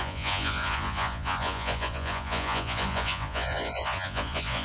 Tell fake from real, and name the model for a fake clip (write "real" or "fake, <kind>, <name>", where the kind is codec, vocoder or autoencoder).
fake, vocoder, Vocos